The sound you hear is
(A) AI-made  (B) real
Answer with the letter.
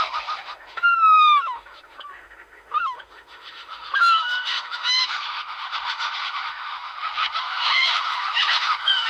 A